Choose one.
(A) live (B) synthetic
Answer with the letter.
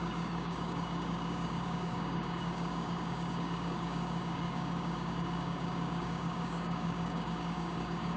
B